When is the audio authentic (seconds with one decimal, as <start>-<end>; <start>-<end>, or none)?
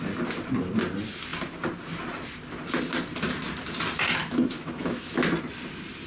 0.0-4.2; 5.2-6.1